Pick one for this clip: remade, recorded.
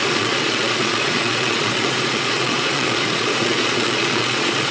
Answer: remade